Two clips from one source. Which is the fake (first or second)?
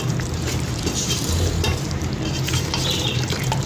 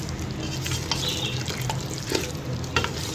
first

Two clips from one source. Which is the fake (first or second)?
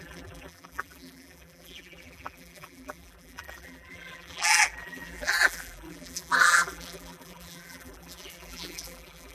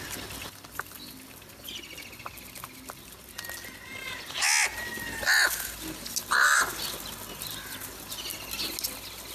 first